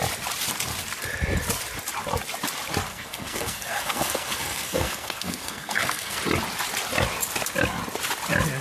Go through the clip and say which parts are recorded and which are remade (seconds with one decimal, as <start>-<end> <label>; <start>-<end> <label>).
0.0-2.9 recorded; 2.9-6.2 remade; 6.2-8.6 recorded